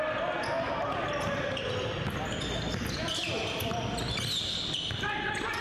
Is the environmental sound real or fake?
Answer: real